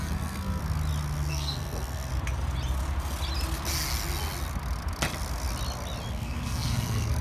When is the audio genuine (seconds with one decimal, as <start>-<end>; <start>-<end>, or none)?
0.6-1.3; 2.1-6.1